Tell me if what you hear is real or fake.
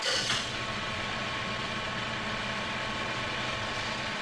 fake